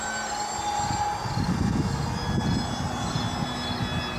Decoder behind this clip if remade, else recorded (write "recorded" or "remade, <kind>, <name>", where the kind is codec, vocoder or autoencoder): recorded